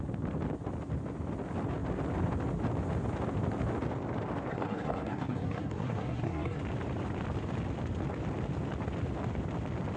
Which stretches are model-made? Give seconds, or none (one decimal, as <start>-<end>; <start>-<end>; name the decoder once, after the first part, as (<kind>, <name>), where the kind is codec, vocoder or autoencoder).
4.5-6.6 (codec, SNAC)